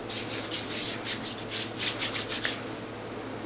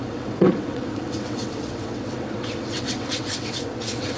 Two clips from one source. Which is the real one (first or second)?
first